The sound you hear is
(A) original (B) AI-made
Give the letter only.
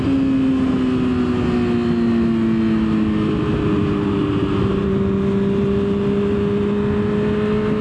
A